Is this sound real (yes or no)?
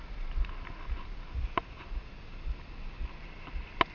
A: yes